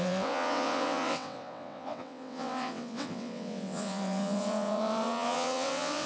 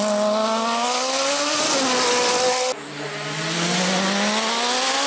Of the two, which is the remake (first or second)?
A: first